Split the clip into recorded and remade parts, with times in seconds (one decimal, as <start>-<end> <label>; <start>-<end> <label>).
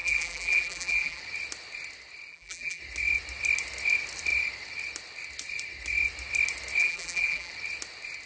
0.0-1.2 remade; 1.2-2.3 recorded; 2.3-2.8 remade; 2.8-6.8 recorded; 6.8-7.5 remade; 7.5-8.3 recorded